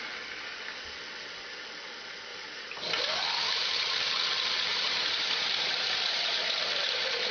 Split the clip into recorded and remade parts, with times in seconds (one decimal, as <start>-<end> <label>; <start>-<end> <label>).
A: 0.0-2.3 recorded; 2.3-3.0 remade; 3.0-4.7 recorded; 4.7-7.3 remade